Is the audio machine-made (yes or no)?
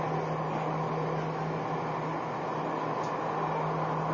no